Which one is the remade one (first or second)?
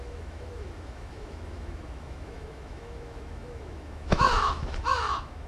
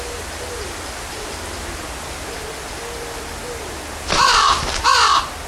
first